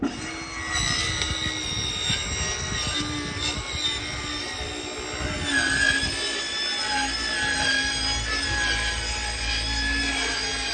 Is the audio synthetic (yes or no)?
no